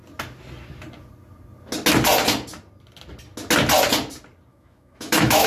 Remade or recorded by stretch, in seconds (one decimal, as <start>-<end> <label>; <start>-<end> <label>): 0.0-4.5 recorded; 4.5-5.5 remade